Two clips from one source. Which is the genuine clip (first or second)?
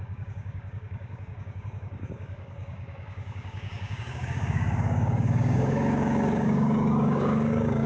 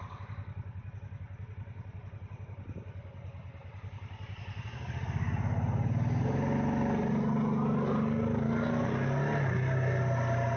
second